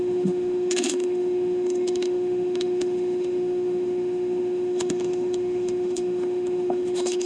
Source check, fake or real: fake